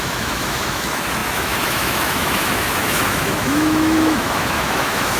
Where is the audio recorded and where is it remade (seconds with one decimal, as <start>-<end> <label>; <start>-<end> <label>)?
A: 0.0-5.2 remade